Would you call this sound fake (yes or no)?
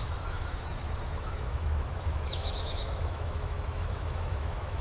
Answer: yes